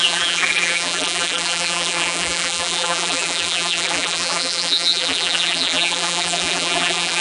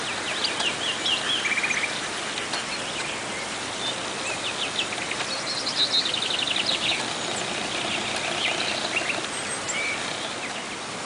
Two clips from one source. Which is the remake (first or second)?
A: first